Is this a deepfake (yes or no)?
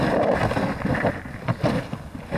no